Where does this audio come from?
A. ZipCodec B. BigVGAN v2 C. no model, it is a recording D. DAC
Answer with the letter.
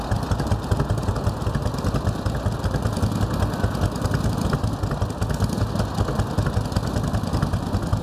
C